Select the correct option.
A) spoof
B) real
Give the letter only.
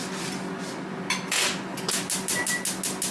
B